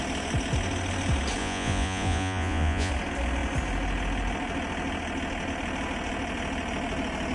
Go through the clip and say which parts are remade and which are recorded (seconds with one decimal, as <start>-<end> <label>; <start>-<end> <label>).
0.0-1.4 recorded; 1.4-2.9 remade; 2.9-7.3 recorded